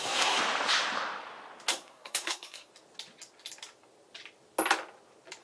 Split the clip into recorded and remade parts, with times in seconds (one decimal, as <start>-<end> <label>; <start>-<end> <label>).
0.0-0.4 remade; 0.4-1.7 recorded; 1.7-2.7 remade; 2.7-5.4 recorded